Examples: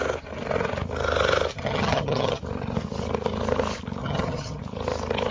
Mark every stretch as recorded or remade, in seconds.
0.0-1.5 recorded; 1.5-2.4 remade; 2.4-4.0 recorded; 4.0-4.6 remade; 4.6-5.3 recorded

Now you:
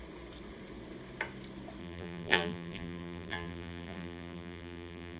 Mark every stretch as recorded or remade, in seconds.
0.0-1.8 recorded; 1.8-5.2 remade

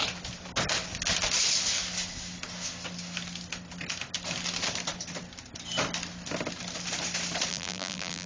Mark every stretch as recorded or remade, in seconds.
0.0-7.5 recorded; 7.5-8.3 remade

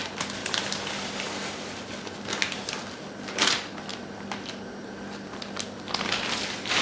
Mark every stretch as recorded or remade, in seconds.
0.0-0.4 recorded; 0.4-1.9 remade; 1.9-6.8 recorded

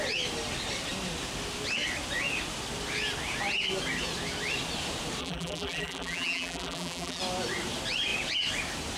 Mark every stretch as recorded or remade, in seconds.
0.0-5.2 recorded; 5.2-7.2 remade; 7.2-9.0 recorded

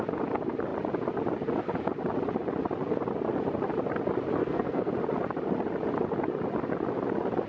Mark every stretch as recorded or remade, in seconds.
0.0-4.4 recorded; 4.4-4.9 remade; 4.9-7.5 recorded

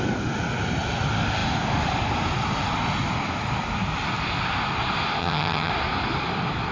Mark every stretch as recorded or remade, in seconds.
0.0-5.2 recorded; 5.2-5.7 remade; 5.7-6.7 recorded